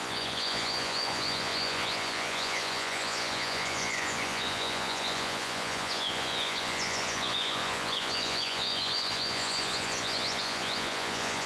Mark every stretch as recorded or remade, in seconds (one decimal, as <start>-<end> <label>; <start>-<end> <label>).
0.0-11.5 remade